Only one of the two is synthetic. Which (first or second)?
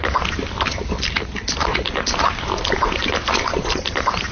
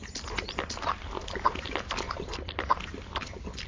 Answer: first